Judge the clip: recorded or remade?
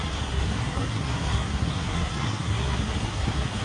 remade